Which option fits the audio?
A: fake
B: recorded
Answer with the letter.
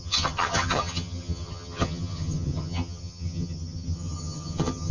A